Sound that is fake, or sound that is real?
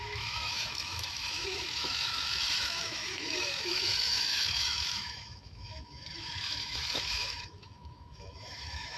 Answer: fake